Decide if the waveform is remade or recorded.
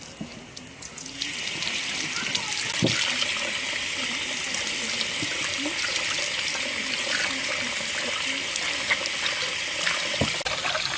recorded